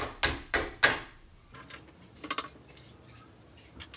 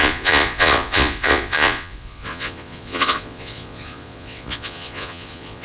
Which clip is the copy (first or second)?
second